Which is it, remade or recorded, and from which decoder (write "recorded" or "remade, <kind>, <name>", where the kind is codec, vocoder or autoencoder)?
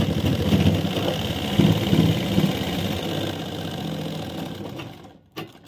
recorded